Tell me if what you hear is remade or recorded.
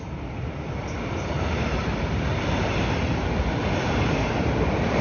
recorded